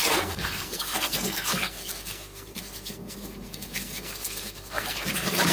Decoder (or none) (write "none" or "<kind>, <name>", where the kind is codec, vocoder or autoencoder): codec, SNAC